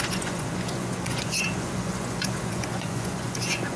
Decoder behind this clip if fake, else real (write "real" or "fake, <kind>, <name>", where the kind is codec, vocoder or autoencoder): fake, vocoder, Vocos